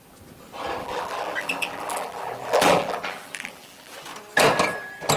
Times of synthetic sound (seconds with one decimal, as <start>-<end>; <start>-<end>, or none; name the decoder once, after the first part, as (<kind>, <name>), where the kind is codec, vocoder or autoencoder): 0.8-3.9 (vocoder, BigVGAN v2)